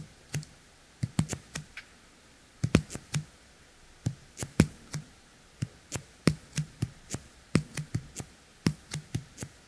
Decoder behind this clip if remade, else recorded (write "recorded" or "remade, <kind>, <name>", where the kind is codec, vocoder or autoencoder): recorded